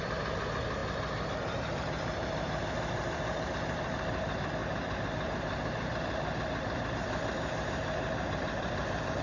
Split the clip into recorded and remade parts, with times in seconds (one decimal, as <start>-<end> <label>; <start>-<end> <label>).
0.0-9.2 remade